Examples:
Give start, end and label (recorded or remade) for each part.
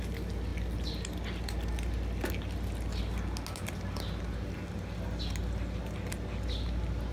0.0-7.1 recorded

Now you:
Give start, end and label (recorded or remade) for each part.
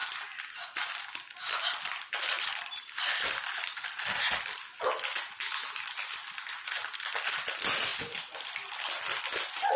0.0-9.8 recorded